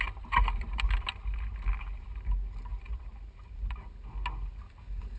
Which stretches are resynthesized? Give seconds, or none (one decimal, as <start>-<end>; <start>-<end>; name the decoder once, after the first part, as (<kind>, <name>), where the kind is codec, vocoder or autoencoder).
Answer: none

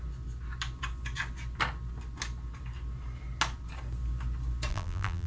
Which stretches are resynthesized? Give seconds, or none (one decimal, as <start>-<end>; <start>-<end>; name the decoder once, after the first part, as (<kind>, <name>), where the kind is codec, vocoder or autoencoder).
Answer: 4.7-5.3 (vocoder, BigVGAN v2)

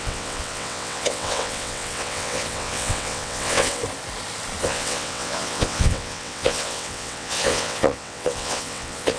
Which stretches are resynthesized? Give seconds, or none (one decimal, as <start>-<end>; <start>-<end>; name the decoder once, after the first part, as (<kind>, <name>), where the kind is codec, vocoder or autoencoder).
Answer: 0.0-3.8 (vocoder, WaveNeXt); 4.6-9.2

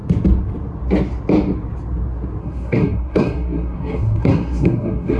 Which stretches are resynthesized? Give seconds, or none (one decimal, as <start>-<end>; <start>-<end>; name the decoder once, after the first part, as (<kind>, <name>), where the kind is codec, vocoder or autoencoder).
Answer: 2.4-5.2 (codec, SNAC)

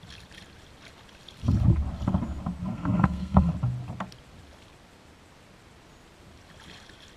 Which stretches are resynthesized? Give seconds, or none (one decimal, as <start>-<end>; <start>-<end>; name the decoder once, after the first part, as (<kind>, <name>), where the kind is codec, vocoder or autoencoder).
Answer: 2.7-3.5 (codec, SNAC)

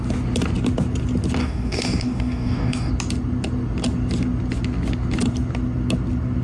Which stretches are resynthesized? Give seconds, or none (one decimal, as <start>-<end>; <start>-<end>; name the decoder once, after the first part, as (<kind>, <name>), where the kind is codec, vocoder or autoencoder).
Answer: 1.4-2.9 (codec, DAC)

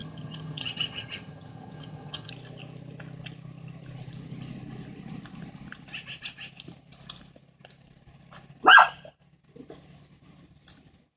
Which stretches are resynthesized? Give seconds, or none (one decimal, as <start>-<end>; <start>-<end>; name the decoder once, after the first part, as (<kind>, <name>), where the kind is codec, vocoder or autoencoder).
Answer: 0.0-2.3 (vocoder, HiFi-GAN)

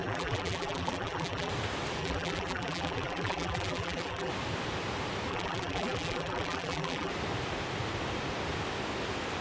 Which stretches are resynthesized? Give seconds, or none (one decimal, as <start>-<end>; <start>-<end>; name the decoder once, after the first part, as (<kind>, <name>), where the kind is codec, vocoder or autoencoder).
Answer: 0.0-1.5 (vocoder, BigVGAN v2); 2.0-4.3; 5.3-7.1